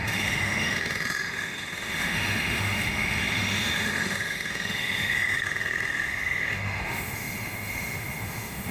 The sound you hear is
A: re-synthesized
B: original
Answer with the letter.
A